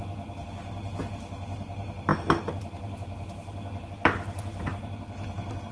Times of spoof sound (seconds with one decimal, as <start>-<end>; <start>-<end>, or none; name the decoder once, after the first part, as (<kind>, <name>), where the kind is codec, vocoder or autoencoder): none